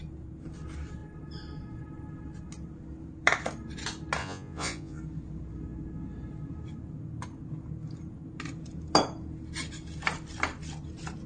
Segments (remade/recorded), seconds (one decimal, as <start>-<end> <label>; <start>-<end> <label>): 0.0-4.2 recorded; 4.2-5.0 remade; 5.0-11.3 recorded